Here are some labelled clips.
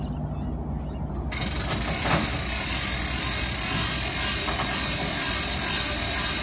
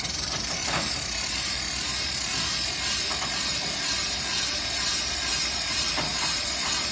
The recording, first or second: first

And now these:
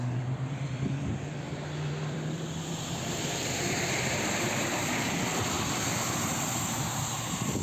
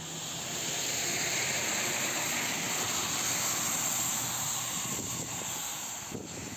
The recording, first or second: second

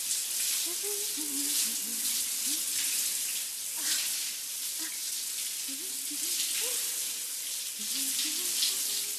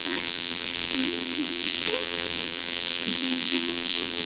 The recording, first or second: first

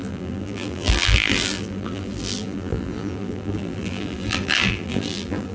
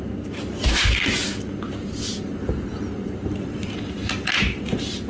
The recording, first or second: second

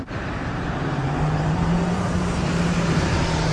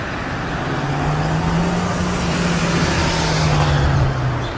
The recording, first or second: second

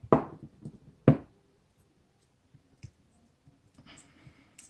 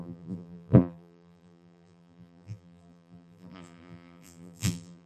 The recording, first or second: first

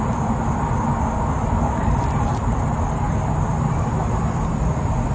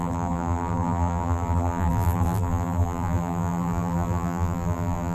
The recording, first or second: first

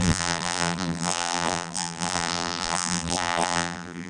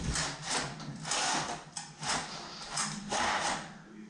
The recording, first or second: second